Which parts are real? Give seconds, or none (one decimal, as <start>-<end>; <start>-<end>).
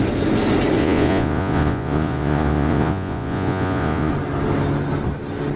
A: 0.0-0.8; 4.1-5.6